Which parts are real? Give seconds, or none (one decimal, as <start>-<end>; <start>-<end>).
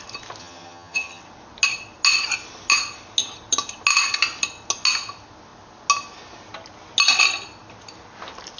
0.0-0.4; 1.2-8.6